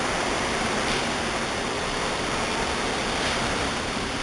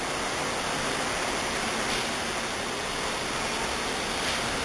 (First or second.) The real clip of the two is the second